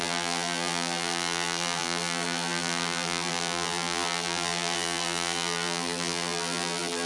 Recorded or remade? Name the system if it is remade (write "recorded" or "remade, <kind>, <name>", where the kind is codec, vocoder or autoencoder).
remade, vocoder, BigVGAN v2